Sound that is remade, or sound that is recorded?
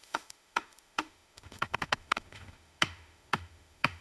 remade